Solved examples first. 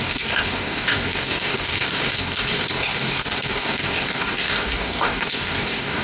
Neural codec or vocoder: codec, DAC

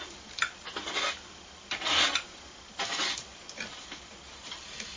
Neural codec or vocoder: none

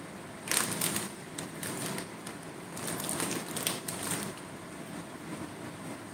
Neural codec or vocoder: none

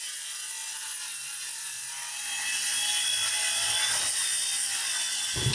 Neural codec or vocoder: none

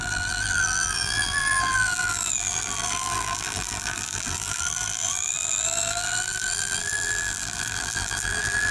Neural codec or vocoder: vocoder, BigVGAN v2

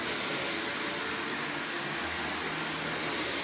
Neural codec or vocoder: none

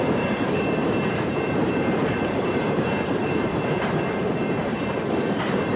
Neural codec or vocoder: vocoder, BigVGAN v2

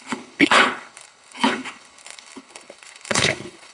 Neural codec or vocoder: codec, HILCodec